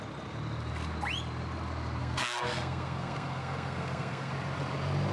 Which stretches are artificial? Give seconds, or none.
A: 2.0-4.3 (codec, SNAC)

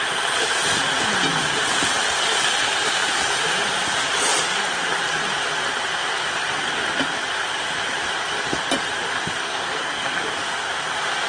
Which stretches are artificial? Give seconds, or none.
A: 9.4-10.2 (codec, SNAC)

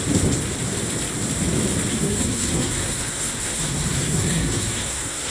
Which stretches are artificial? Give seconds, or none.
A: 1.9-5.3 (codec, SNAC)